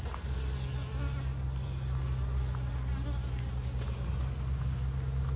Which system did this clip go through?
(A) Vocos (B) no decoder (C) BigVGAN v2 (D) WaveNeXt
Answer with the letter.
B